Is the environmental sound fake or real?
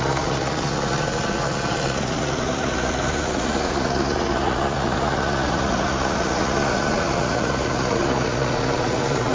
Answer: fake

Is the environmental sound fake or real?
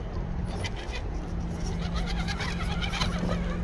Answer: real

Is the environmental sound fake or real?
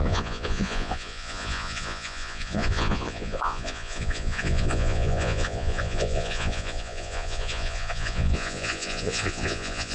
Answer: fake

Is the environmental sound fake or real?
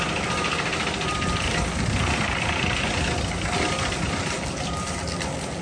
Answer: real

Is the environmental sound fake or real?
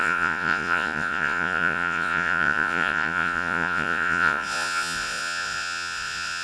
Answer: fake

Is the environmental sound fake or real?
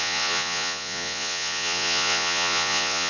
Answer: fake